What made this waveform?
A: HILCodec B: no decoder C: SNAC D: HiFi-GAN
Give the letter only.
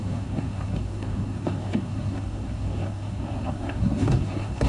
C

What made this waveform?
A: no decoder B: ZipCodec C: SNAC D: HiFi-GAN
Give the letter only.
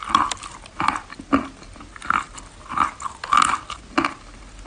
A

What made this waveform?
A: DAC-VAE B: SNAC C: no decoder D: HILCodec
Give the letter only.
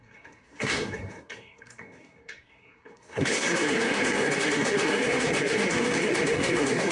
B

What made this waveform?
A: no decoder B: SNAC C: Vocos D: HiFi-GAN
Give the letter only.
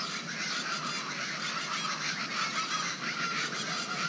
A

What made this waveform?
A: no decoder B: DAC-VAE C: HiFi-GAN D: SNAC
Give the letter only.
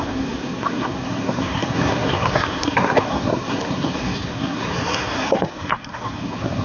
D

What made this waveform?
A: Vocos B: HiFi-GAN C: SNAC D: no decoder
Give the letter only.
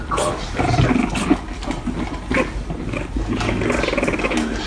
D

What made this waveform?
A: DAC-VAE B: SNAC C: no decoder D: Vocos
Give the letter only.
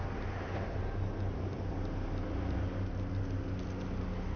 C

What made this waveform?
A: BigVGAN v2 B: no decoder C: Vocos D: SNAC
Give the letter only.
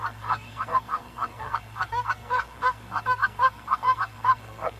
D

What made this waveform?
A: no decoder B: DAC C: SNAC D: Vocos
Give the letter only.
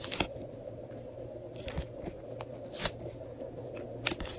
A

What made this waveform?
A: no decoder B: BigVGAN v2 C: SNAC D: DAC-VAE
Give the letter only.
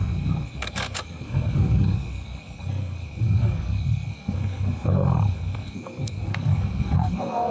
C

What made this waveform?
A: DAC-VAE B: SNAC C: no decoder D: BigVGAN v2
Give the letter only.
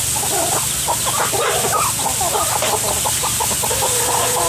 C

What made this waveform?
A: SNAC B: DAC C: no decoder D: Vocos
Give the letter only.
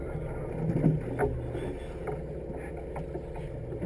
C